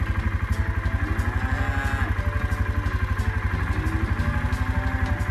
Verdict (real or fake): real